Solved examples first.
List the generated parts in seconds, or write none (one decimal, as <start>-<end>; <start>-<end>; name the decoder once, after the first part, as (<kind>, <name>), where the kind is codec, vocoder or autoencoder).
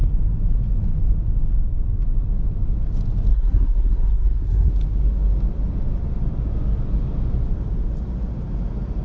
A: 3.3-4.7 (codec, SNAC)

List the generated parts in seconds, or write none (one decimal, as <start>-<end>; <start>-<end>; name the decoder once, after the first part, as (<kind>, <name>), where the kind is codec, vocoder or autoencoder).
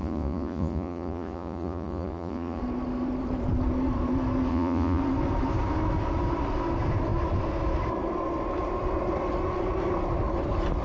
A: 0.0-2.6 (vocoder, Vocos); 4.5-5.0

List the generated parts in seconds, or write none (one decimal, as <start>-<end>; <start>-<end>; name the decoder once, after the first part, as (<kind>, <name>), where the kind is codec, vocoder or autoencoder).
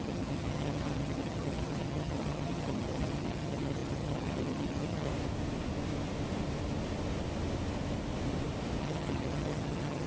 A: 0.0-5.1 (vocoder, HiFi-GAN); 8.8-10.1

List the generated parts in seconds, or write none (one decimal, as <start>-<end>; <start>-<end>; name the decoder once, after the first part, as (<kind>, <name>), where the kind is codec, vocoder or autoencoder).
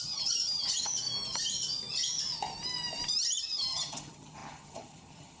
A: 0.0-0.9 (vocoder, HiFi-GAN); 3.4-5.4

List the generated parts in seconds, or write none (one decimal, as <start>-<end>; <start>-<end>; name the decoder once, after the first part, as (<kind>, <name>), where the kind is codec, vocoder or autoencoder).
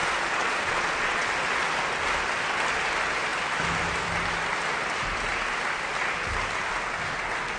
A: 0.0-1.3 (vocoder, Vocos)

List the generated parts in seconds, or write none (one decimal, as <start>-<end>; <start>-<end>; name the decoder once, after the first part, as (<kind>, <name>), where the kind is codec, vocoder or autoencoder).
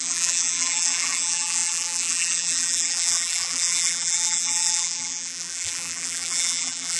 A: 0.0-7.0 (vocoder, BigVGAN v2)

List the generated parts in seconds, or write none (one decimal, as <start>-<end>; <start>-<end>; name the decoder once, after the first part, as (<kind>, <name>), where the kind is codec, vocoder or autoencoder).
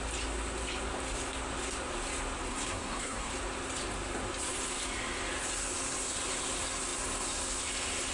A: 2.5-3.3 (codec, SNAC)